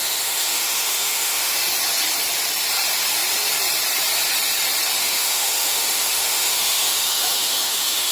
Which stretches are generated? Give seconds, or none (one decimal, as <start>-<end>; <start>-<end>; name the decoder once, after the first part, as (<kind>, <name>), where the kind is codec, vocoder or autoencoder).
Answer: 0.0-1.6 (autoencoder, DAC-VAE); 5.0-8.1